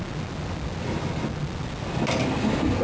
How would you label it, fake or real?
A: real